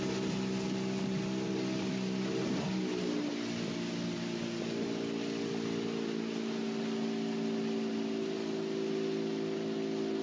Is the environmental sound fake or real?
real